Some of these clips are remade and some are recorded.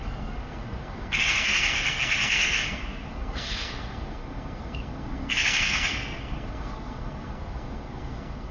remade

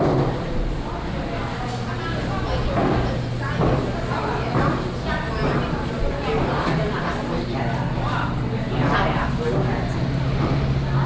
recorded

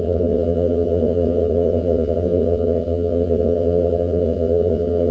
remade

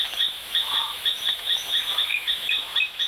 remade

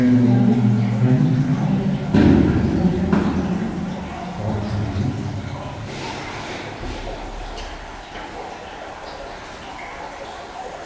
recorded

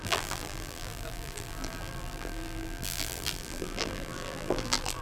remade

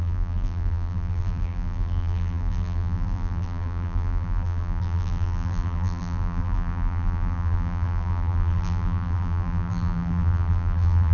remade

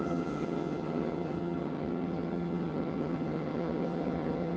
remade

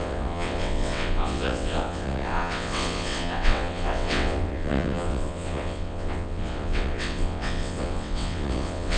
remade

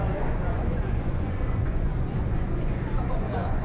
remade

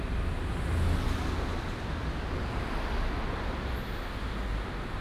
recorded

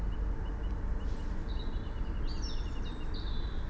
recorded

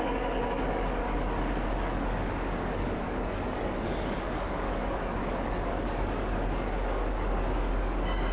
remade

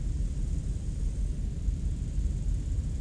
recorded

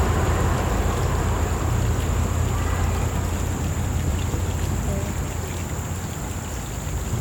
recorded